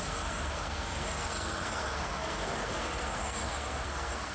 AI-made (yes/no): yes